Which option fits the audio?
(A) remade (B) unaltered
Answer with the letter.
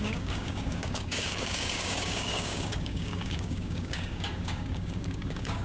A